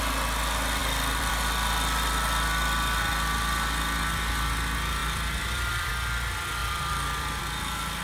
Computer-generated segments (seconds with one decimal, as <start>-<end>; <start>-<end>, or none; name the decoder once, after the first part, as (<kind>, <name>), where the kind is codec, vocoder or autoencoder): 5.0-5.9 (vocoder, BigVGAN v2); 6.6-7.4